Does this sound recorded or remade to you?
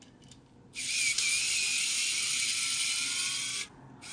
recorded